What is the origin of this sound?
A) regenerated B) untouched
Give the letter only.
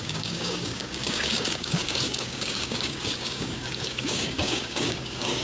A